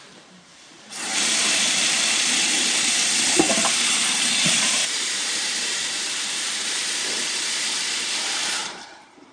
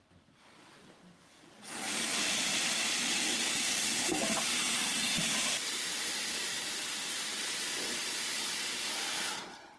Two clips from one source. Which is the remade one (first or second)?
first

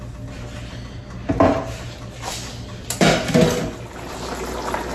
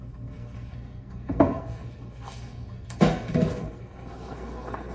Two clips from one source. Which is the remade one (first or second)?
second